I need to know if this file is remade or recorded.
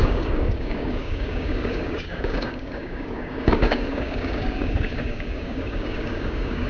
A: remade